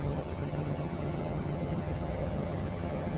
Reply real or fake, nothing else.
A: fake